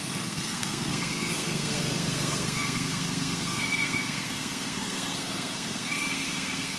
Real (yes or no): no